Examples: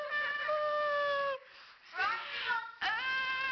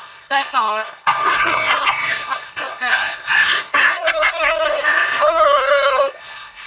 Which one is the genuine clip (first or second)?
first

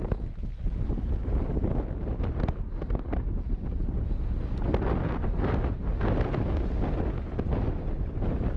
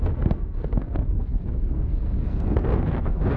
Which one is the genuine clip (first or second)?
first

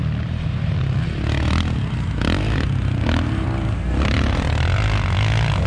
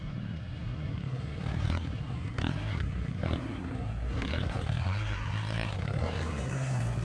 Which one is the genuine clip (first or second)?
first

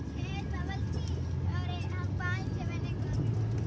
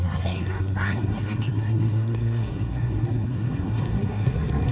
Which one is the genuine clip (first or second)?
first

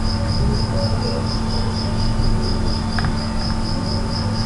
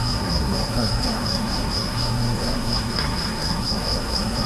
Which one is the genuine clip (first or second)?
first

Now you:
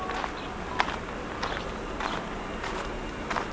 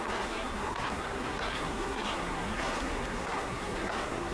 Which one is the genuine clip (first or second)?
first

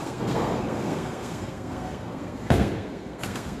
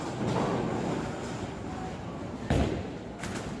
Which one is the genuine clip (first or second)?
second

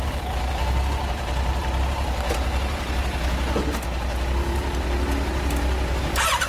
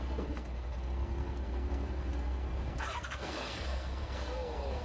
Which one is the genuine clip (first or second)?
first